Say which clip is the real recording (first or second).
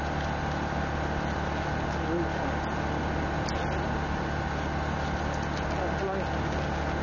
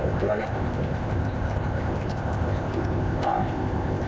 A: first